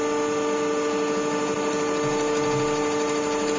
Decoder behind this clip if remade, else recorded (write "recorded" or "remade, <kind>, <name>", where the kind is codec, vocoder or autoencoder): recorded